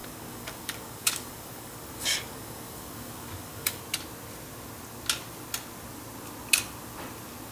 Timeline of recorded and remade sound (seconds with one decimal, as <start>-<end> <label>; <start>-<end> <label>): 0.0-3.8 remade; 3.8-7.5 recorded